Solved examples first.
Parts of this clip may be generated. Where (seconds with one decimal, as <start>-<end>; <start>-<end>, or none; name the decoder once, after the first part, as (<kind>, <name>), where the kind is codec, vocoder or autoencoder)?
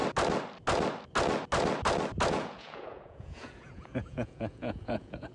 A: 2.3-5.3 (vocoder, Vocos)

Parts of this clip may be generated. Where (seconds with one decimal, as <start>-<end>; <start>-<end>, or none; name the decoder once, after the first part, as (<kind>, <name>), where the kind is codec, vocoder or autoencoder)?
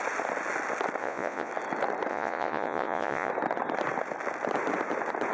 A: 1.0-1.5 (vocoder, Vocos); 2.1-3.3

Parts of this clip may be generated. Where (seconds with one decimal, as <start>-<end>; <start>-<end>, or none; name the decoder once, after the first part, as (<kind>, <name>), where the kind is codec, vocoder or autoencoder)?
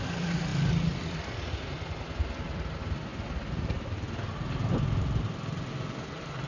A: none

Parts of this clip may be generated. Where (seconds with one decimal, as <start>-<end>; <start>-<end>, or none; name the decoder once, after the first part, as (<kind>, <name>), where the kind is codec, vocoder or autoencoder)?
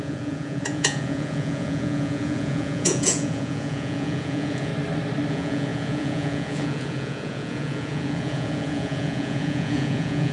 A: 0.0-4.7 (vocoder, Vocos); 5.3-10.3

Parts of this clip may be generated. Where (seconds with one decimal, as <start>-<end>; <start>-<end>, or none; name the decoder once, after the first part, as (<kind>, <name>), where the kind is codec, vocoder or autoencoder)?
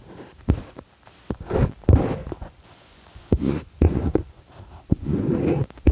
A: 2.2-4.4 (vocoder, Vocos); 4.9-5.4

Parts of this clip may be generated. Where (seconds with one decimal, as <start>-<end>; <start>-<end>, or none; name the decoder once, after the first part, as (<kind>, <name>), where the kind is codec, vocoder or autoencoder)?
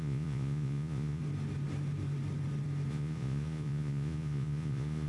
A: 0.0-1.2 (vocoder, Vocos); 2.9-5.1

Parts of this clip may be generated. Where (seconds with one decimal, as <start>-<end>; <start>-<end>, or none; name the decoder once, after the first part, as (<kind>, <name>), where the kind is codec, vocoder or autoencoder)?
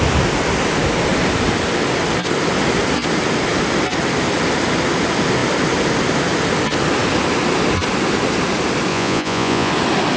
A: 8.9-9.7 (vocoder, Vocos)